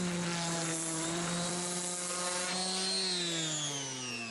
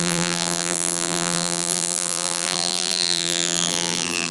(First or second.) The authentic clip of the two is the first